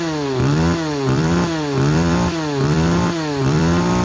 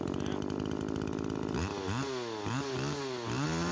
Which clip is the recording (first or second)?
second